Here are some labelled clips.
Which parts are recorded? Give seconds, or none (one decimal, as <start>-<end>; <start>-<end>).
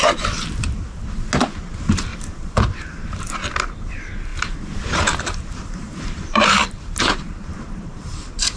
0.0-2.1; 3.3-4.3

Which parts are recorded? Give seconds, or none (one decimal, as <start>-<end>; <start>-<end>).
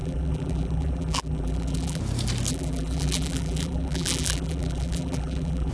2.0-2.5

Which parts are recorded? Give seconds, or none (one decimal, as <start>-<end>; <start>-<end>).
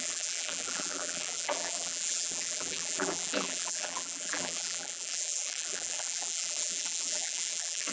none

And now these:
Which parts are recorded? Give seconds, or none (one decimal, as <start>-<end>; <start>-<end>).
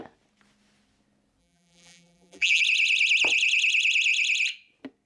0.0-1.4; 2.6-5.1